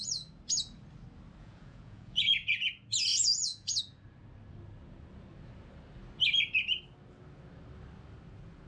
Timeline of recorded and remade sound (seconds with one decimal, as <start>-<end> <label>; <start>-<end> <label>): 0.0-1.4 recorded; 1.4-2.7 remade; 2.7-3.1 recorded; 3.1-3.8 remade; 3.8-8.7 recorded